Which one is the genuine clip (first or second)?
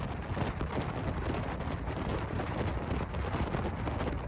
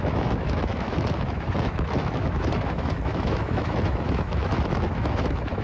first